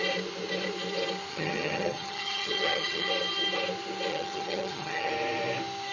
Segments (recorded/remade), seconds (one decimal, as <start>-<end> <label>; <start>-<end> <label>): 0.0-1.3 recorded; 1.3-3.1 remade; 3.1-4.1 recorded; 4.1-5.1 remade; 5.1-5.9 recorded